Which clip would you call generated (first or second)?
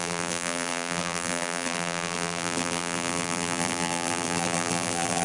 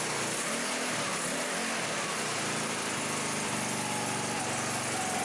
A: first